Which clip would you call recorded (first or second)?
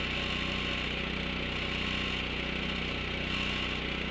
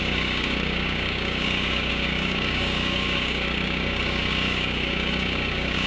first